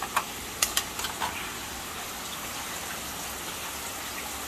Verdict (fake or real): real